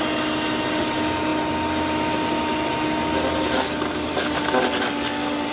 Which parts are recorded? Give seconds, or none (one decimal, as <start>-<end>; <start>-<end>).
0.0-5.5